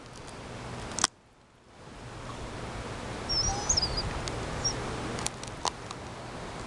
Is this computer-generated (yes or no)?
no